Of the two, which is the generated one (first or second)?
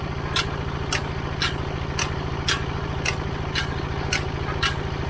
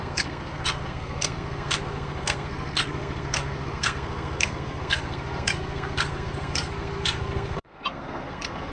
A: second